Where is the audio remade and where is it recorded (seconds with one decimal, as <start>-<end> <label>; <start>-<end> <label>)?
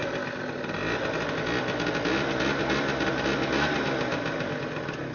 0.0-5.1 recorded